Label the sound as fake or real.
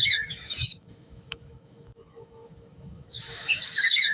fake